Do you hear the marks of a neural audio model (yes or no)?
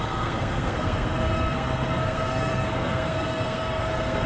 yes